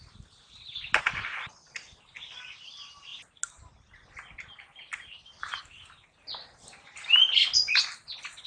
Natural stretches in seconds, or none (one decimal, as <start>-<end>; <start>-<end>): 0.0-8.5

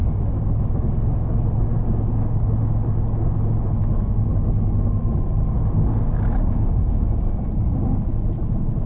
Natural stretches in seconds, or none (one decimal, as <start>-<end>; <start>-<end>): 0.0-6.4; 7.1-8.9

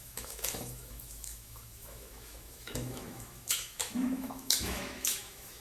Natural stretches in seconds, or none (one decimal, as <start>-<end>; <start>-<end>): none

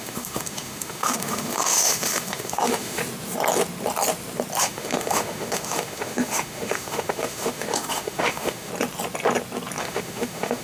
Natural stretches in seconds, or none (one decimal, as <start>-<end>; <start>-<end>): 3.0-4.6; 8.7-9.8

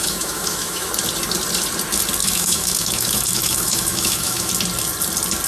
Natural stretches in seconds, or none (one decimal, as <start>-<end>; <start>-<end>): 0.9-2.2; 4.5-5.5

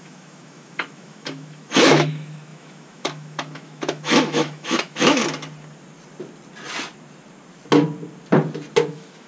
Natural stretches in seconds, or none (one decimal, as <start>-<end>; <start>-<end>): 5.2-8.9

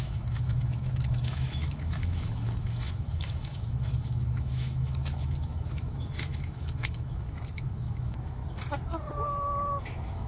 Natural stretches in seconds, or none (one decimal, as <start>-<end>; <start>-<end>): 8.4-9.8

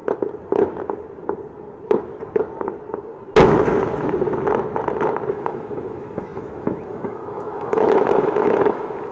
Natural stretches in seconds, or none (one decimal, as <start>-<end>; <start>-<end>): 0.0-5.3